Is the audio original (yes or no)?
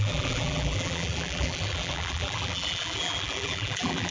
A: no